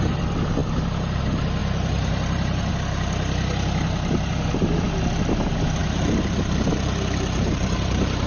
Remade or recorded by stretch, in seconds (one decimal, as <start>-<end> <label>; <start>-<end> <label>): 0.0-1.6 recorded; 1.6-2.7 remade; 2.7-5.8 recorded; 5.8-8.3 remade